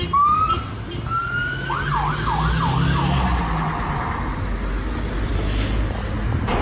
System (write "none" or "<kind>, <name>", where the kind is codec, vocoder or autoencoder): none